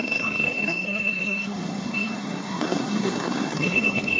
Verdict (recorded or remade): remade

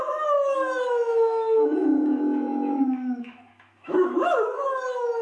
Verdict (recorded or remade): remade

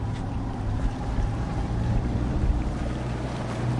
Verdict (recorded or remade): remade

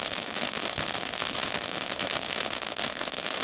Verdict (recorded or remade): remade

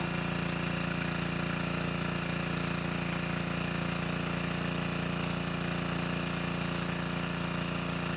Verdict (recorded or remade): recorded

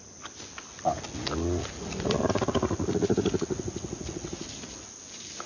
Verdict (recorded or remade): recorded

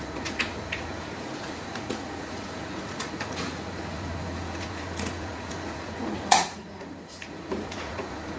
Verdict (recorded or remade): remade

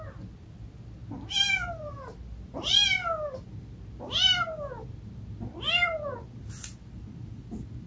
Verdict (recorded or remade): recorded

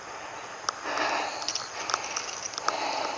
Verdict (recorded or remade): recorded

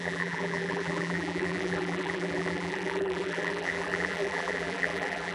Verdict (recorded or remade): remade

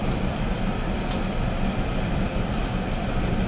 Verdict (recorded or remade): remade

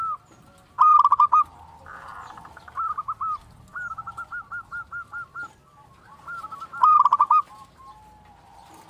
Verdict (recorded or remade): recorded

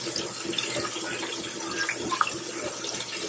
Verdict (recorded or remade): recorded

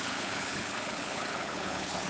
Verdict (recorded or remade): remade